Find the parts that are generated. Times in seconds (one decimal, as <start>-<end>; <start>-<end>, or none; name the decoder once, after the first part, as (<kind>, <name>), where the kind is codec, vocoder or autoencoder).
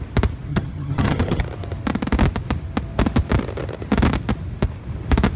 0.5-1.4 (vocoder, HiFi-GAN)